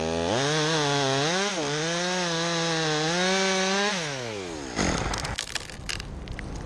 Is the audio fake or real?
real